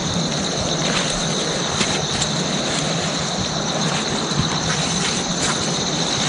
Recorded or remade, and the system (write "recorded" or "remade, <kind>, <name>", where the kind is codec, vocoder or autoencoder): remade, vocoder, BigVGAN v2